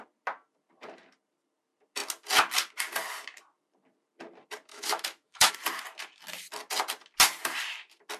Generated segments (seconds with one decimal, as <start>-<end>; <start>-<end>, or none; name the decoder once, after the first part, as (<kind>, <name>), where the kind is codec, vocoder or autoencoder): 4.7-5.5 (autoencoder, DAC-VAE)

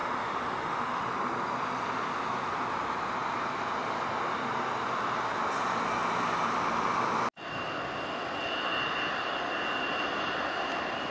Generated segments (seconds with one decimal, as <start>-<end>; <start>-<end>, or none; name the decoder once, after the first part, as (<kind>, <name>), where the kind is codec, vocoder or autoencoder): 0.0-1.0 (autoencoder, DAC-VAE)